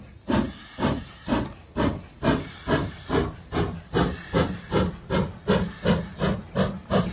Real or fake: real